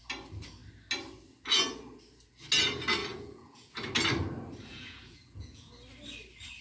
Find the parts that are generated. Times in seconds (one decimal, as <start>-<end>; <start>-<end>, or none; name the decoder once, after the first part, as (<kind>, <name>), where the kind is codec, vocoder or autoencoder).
3.0-3.7 (vocoder, Vocos); 4.7-5.7